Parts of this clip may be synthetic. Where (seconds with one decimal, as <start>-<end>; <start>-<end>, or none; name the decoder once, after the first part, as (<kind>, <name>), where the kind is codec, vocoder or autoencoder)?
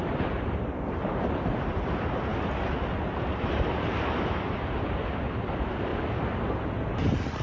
0.0-2.3 (vocoder, BigVGAN v2); 3.3-5.9; 7.0-7.4